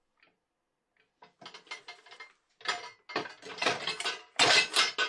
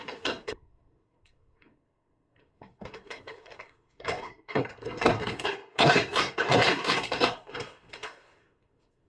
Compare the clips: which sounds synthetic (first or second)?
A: second